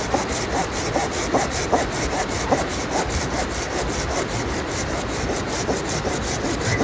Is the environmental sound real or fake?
real